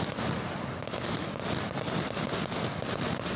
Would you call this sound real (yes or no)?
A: yes